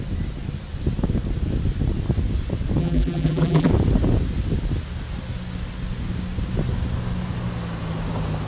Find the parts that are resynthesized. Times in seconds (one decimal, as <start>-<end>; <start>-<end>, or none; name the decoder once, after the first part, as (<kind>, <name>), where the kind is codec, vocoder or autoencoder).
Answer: 2.8-3.7 (vocoder, BigVGAN v2)